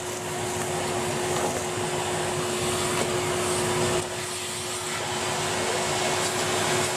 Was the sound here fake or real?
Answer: real